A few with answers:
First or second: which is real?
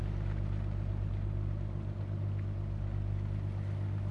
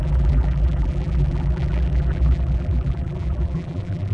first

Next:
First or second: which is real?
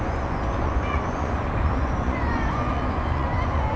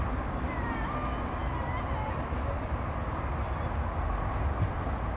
second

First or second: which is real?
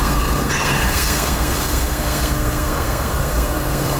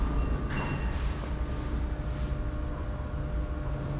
second